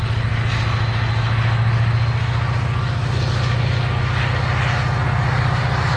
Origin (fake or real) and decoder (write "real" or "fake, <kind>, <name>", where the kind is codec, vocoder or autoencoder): real